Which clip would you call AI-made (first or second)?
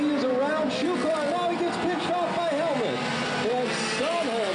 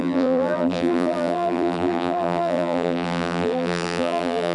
second